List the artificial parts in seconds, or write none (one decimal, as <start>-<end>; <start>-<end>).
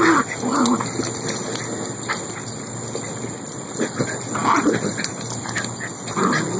none